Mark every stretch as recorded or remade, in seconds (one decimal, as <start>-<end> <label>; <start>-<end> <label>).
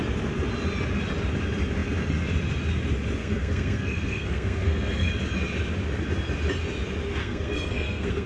0.0-3.2 recorded; 3.2-5.1 remade; 5.1-7.2 recorded; 7.2-8.3 remade